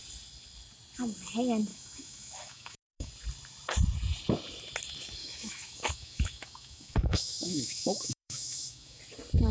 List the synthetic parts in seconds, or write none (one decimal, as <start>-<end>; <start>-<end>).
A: 1.7-3.1; 5.2-9.0